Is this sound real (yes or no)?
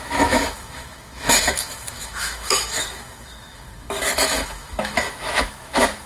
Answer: no